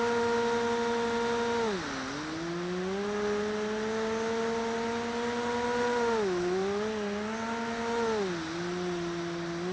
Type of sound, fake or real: real